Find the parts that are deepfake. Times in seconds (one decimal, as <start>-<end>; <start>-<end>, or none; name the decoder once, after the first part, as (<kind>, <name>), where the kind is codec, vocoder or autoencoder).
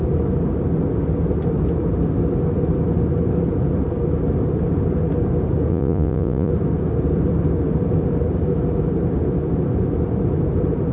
5.7-6.5 (vocoder, Vocos)